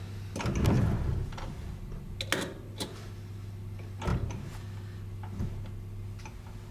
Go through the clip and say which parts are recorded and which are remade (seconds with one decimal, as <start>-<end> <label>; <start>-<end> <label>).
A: 0.0-1.1 recorded; 1.1-1.7 remade; 1.7-6.7 recorded